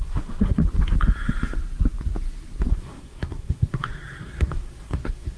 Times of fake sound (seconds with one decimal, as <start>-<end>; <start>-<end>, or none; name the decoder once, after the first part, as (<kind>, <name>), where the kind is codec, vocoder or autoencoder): 0.0-0.6 (codec, SNAC); 2.7-5.4